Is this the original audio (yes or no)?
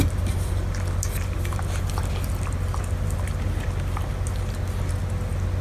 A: yes